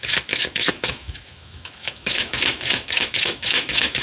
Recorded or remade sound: remade